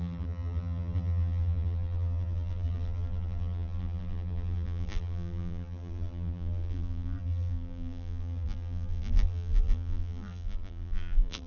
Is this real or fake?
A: fake